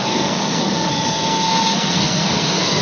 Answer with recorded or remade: remade